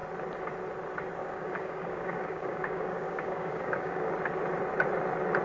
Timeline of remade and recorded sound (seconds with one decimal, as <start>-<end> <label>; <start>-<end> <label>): 0.0-1.2 recorded; 1.2-4.1 remade; 4.1-5.4 recorded